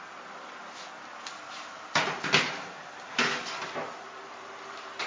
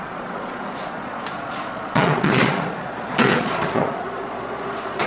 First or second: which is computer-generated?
second